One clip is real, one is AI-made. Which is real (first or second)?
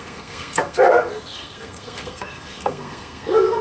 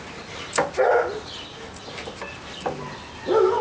second